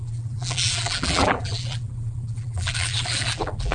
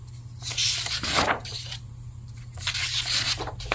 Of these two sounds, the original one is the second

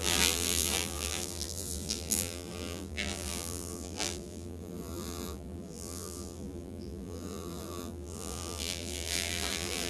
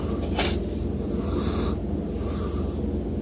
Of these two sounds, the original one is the second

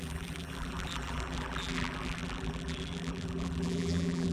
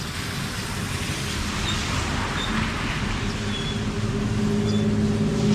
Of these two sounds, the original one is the second